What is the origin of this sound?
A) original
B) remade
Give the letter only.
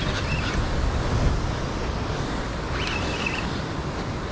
A